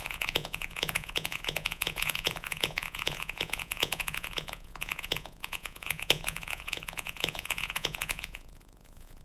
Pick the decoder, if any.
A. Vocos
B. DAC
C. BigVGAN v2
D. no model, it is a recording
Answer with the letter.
A